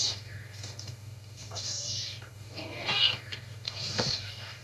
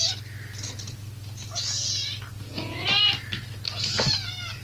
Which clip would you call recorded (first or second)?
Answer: second